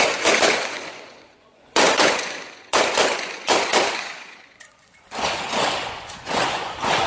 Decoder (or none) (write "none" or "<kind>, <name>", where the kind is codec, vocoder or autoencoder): vocoder, Vocos